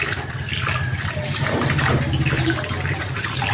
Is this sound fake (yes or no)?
no